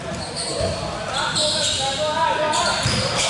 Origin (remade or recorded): recorded